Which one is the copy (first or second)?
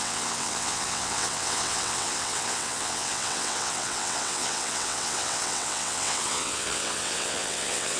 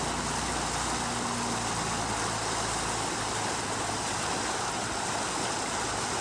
first